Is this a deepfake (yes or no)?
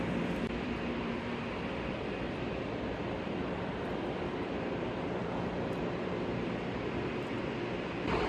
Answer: yes